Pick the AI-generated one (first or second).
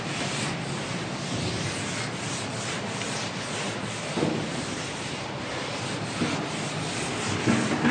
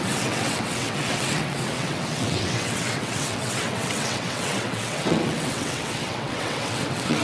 second